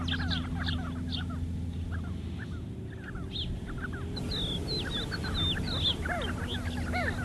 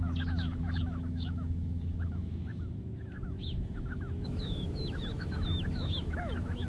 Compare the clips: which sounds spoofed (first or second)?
second